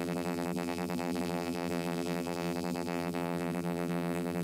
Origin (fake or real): fake